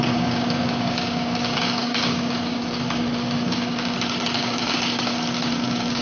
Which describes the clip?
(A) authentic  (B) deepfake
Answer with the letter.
B